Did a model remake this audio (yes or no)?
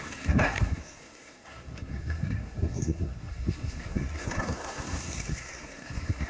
yes